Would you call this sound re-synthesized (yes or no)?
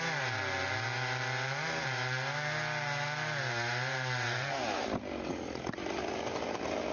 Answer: no